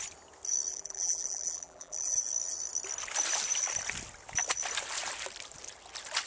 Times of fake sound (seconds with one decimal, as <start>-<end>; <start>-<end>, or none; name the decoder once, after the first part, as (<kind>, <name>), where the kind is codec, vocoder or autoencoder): 0.7-2.1 (vocoder, BigVGAN v2)